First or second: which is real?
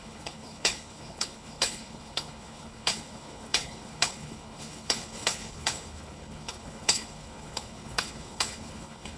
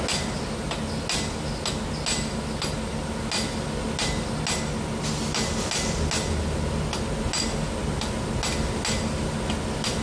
second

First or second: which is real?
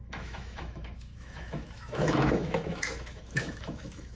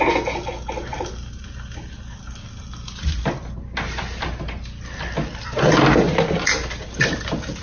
second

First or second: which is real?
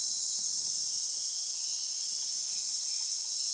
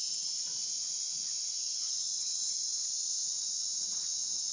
first